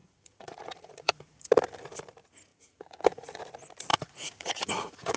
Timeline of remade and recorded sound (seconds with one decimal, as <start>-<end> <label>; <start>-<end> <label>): 0.0-1.5 remade; 1.5-2.5 recorded; 2.5-3.4 remade; 3.4-3.9 recorded; 3.9-5.2 remade